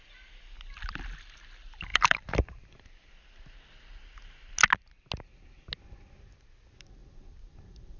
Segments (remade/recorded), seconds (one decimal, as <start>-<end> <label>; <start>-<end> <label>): 0.0-1.9 recorded; 1.9-2.6 remade; 2.6-8.0 recorded